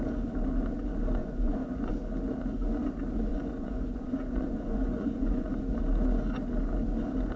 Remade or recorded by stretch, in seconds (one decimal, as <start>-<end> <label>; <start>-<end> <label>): 0.0-1.2 recorded; 1.2-1.9 remade; 1.9-3.3 recorded; 3.3-5.5 remade; 5.5-7.4 recorded